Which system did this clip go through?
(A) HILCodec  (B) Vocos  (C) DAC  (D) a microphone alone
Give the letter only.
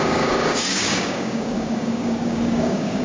C